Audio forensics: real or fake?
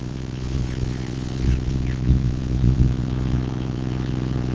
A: fake